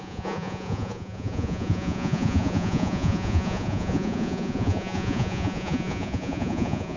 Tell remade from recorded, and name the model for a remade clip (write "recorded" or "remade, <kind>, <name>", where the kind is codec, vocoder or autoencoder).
remade, vocoder, Vocos